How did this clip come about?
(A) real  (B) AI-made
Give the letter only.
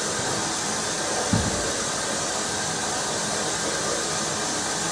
B